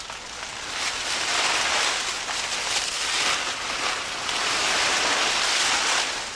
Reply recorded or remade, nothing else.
recorded